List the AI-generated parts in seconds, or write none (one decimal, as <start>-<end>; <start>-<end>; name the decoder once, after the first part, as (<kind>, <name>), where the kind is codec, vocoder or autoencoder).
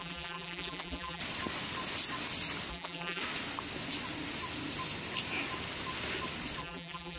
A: 0.0-1.2 (vocoder, BigVGAN v2); 2.7-3.2; 6.6-7.2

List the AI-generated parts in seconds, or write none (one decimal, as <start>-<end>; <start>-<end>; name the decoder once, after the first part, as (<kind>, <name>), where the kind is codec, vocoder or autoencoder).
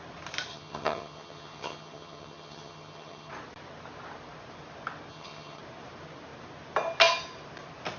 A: 0.5-3.3 (vocoder, HiFi-GAN); 5.1-5.6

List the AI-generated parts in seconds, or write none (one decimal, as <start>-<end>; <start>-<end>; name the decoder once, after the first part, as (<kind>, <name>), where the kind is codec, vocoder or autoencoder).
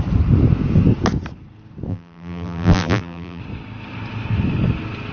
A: 1.9-3.4 (vocoder, BigVGAN v2)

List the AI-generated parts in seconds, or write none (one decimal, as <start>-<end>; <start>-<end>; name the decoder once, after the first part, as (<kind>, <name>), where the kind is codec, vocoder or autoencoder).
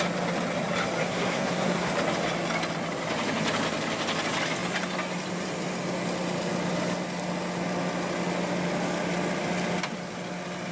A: 1.0-1.9 (codec, SNAC)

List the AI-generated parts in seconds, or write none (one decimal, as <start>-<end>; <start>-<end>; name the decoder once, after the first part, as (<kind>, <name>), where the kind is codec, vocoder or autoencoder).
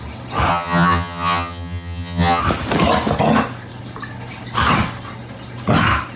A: 0.5-2.4 (vocoder, HiFi-GAN)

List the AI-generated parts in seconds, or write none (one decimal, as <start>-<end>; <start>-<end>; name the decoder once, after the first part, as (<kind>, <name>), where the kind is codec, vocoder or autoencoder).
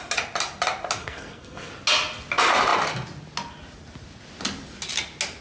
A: 1.0-1.7 (codec, SNAC)